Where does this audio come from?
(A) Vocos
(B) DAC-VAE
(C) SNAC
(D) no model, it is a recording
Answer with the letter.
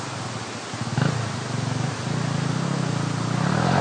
D